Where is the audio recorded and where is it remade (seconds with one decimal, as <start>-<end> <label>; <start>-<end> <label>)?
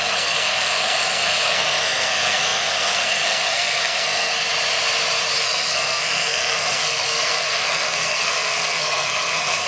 0.0-4.3 remade; 4.3-5.4 recorded; 5.4-9.7 remade